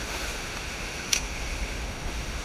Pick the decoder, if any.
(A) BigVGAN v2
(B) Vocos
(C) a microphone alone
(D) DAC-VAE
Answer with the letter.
D